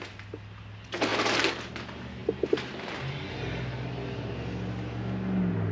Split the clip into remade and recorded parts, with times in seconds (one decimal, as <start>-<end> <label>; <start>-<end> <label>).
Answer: 0.0-5.7 recorded